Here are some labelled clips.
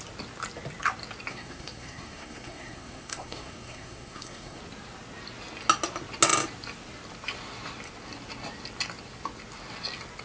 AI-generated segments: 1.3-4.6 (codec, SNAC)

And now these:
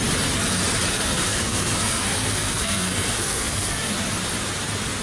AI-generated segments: 0.9-3.9 (codec, SNAC)

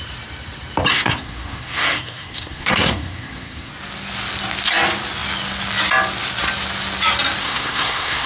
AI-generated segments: 0.9-3.7 (codec, SNAC); 7.4-8.3